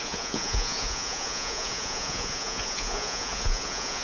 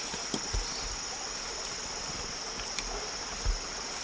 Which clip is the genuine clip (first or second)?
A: second